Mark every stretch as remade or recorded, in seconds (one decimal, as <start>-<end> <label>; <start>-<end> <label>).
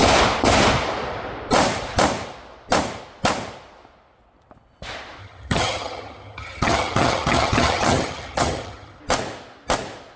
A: 0.0-5.2 recorded; 5.2-9.0 remade; 9.0-10.2 recorded